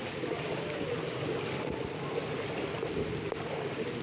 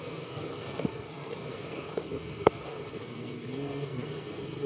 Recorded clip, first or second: first